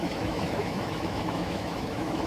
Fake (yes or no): yes